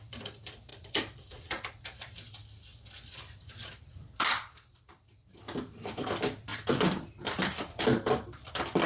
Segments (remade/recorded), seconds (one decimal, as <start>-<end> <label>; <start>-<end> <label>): 0.0-8.9 remade